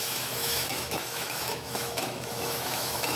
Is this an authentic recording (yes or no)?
no